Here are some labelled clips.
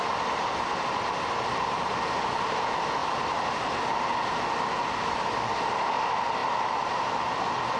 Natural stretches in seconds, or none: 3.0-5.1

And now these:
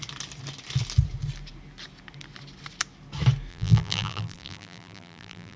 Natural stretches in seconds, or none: 0.0-3.5

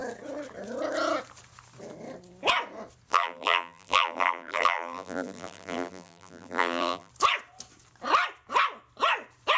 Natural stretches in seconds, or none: 0.0-3.1; 7.1-9.6

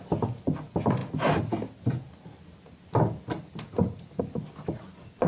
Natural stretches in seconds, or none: 0.0-5.3

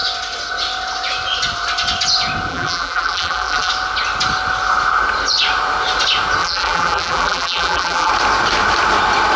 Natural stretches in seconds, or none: 0.0-2.5; 3.7-6.4; 8.1-9.4

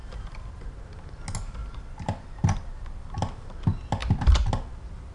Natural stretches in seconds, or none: 0.6-1.6; 3.1-4.0; 4.5-5.1